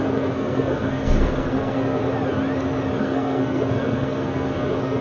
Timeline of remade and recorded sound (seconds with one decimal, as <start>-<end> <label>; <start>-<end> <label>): 0.0-2.0 remade; 2.0-3.0 recorded; 3.0-5.0 remade

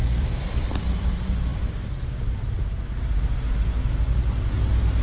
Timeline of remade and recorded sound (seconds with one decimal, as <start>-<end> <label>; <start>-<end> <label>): 0.0-0.8 remade; 0.8-5.0 recorded